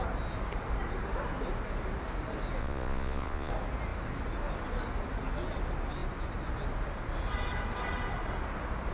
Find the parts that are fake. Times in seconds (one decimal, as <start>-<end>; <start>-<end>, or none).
2.6-3.5